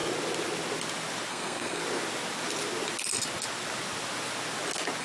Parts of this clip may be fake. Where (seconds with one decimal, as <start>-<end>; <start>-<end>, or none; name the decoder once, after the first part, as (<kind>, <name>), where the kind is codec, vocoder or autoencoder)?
1.3-1.8 (codec, SNAC)